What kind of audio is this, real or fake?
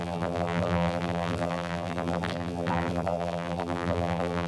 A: fake